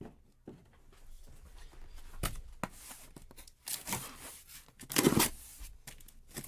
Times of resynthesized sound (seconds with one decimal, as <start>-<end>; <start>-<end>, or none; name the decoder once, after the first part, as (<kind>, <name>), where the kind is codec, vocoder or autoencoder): none